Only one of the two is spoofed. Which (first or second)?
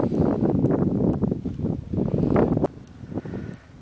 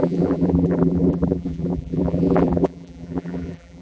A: second